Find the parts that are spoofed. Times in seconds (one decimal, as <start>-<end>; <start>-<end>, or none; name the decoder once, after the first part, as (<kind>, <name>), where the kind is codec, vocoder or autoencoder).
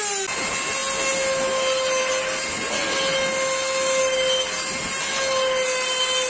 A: none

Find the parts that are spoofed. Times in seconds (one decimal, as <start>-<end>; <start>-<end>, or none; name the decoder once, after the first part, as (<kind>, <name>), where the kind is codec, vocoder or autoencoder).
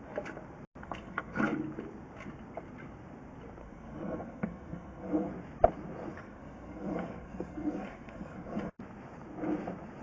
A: 0.8-1.4 (codec, SNAC); 3.6-5.3; 6.1-8.8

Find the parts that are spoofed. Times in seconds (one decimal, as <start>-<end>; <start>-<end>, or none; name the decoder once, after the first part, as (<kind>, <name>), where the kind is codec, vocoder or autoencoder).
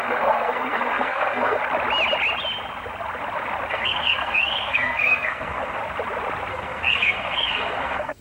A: 0.0-1.6 (codec, SNAC); 3.7-5.8; 6.5-8.2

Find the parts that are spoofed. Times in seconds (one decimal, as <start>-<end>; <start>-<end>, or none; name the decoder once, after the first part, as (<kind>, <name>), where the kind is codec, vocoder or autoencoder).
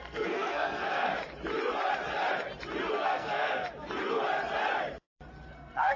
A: 0.0-1.1 (codec, SNAC); 2.9-3.6; 5.5-6.0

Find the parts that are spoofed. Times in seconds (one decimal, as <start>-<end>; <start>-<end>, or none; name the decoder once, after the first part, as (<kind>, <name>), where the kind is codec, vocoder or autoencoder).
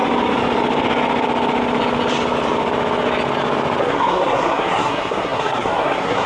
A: 3.8-6.3 (codec, SNAC)